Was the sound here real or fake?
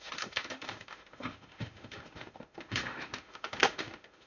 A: fake